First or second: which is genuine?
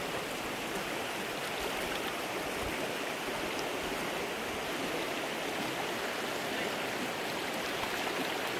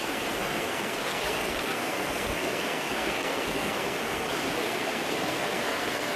first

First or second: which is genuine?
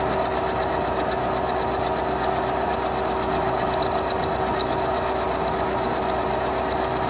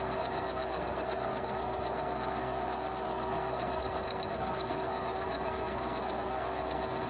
first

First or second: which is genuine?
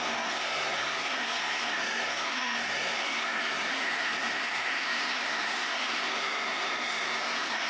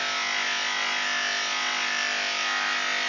second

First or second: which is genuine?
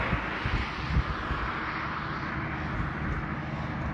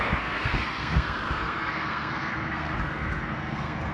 first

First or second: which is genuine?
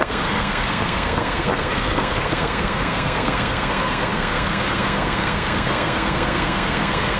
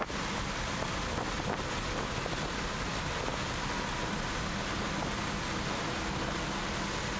second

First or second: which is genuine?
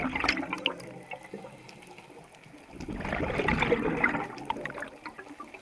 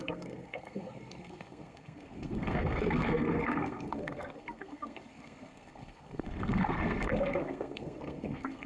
first